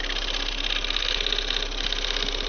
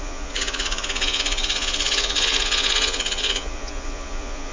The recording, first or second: first